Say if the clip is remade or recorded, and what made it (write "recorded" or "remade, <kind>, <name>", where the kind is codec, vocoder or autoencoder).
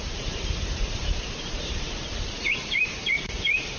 remade, vocoder, BigVGAN v2